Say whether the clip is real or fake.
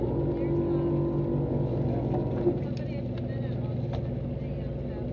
real